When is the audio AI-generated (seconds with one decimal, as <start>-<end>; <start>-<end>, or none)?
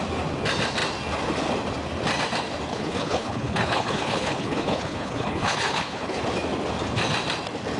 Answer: 2.7-6.2